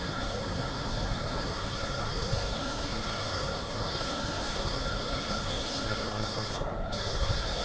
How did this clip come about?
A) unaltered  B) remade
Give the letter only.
B